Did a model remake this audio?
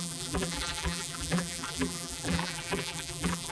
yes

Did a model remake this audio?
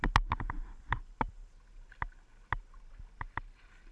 no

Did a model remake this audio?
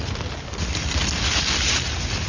no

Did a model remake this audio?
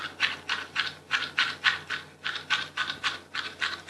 no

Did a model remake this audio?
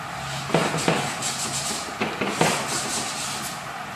no